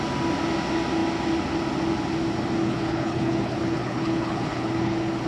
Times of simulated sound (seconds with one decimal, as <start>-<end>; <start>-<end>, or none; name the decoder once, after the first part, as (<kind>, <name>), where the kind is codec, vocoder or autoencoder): 2.6-5.3 (codec, HILCodec)